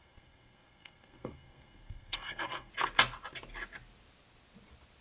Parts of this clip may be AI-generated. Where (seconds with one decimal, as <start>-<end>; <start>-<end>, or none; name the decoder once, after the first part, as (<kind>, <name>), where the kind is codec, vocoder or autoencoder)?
0.0-2.7 (codec, SNAC)